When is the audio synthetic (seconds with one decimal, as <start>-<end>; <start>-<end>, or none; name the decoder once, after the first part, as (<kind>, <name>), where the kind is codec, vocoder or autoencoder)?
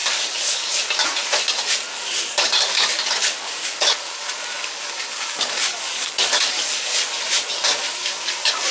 0.0-0.7 (codec, DAC); 1.9-6.9; 8.0-8.7